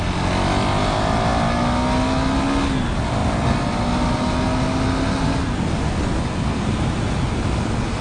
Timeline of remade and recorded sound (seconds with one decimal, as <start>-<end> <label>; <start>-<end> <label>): 0.0-8.0 recorded